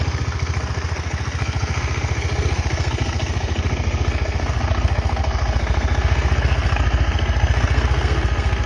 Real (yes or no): no